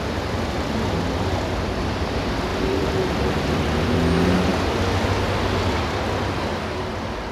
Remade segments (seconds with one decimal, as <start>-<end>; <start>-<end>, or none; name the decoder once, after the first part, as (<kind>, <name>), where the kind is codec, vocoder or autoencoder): 2.5-3.6 (vocoder, BigVGAN v2)